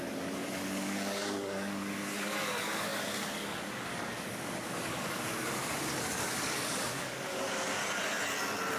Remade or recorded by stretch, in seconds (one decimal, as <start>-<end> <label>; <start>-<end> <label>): 0.0-7.8 remade; 7.8-8.8 recorded